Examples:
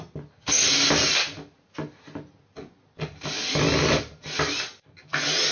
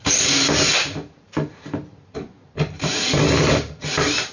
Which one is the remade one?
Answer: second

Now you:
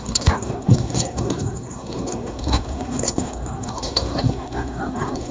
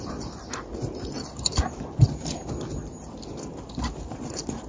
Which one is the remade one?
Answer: first